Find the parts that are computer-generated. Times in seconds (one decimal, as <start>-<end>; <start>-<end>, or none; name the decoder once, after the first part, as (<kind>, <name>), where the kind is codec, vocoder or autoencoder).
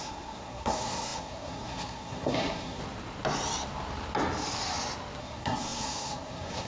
0.0-2.8 (codec, SNAC); 5.2-6.7